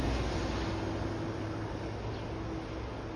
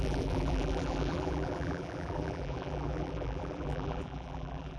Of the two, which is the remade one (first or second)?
second